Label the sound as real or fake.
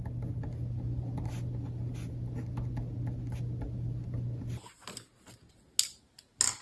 real